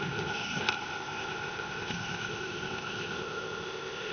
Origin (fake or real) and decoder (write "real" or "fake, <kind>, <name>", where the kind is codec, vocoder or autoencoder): fake, codec, ZipCodec